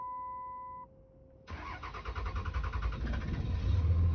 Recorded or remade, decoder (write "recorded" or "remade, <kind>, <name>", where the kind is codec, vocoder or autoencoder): recorded